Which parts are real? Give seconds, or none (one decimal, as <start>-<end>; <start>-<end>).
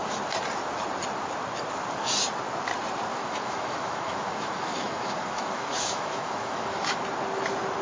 0.0-3.1; 7.0-7.8